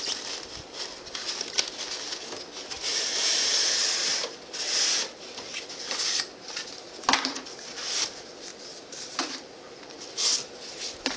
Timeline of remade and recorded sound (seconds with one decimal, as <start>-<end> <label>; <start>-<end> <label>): 0.0-8.5 recorded; 8.5-9.9 remade; 9.9-11.2 recorded

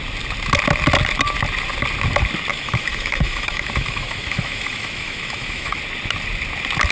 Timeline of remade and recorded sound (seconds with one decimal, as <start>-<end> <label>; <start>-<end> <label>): 0.0-2.5 recorded; 2.5-5.8 remade; 5.8-6.9 recorded

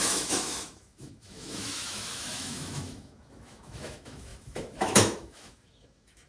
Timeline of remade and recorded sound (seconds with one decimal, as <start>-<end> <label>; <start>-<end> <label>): 0.0-6.3 remade

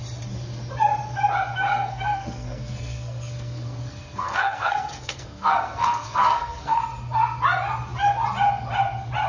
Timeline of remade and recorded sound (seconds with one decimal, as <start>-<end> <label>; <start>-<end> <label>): 0.0-1.7 recorded; 1.7-6.8 remade; 6.8-9.3 recorded

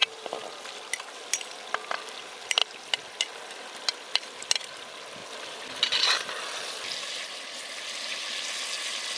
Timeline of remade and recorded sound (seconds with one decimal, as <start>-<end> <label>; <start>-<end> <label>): 0.0-1.1 remade; 1.1-9.2 recorded